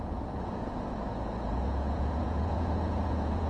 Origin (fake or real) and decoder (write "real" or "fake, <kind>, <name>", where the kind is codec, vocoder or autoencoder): fake, vocoder, Vocos